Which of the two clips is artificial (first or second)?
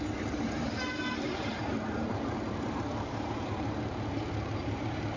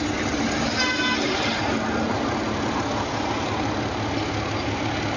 first